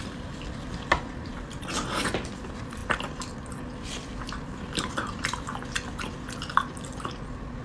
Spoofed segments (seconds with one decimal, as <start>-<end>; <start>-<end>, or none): 0.0-1.3; 2.4-2.8; 4.9-5.5; 6.5-7.6